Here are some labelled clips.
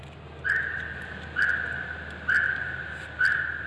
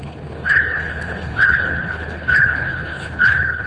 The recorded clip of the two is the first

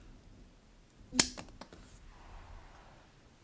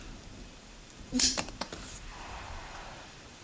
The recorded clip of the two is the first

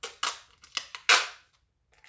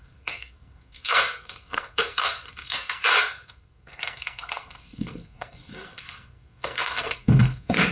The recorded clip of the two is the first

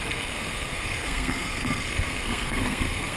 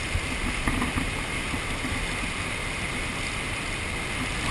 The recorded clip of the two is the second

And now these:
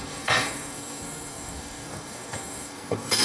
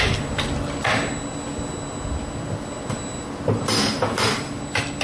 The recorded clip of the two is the second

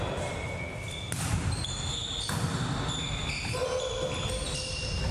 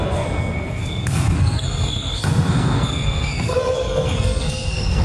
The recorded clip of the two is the first